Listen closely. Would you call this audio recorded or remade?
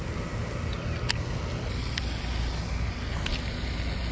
recorded